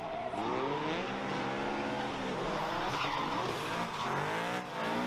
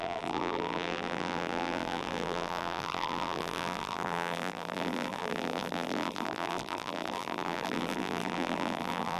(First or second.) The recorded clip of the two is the first